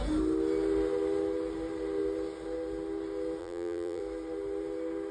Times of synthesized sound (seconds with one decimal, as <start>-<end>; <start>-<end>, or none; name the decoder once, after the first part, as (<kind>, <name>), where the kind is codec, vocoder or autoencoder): 3.4-4.0 (vocoder, BigVGAN v2)